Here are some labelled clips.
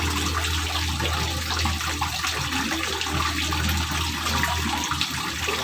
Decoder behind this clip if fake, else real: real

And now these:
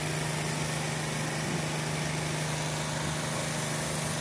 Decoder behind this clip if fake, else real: real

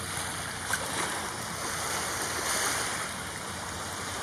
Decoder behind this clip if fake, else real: real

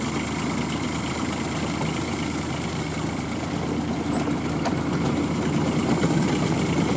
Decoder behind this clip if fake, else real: real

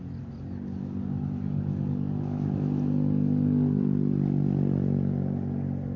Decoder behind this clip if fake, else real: real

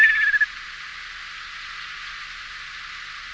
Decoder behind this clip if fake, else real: real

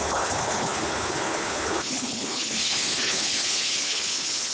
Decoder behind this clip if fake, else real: fake, codec, HILCodec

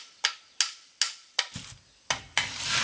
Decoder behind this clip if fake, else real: real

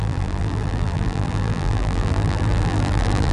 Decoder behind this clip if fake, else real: fake, vocoder, BigVGAN v2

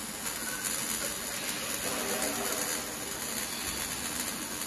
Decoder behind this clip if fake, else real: real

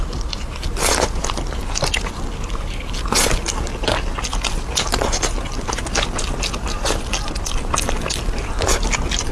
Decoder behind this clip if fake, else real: real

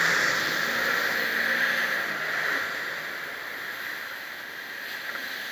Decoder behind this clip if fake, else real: real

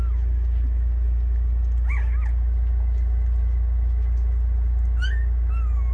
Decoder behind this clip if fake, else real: real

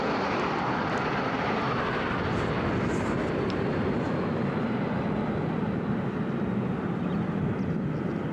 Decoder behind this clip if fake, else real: real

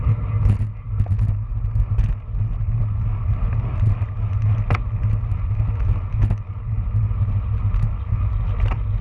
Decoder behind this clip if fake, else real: real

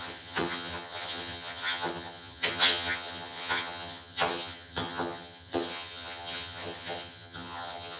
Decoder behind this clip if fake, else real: fake, vocoder, HiFi-GAN